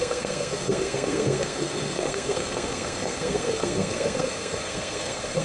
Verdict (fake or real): fake